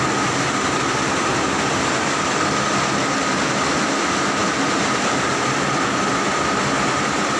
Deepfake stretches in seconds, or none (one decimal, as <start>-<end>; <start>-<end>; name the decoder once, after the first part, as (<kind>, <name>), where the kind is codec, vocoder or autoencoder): none